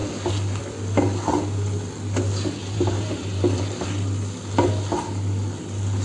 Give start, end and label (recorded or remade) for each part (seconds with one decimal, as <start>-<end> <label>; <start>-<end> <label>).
0.0-2.6 recorded; 2.6-3.8 remade; 3.8-6.0 recorded